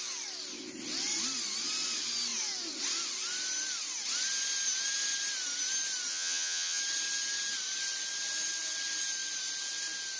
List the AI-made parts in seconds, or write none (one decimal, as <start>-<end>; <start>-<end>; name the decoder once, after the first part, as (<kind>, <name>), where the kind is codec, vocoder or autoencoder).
6.1-6.8 (vocoder, HiFi-GAN)